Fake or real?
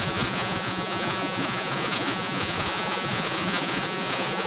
fake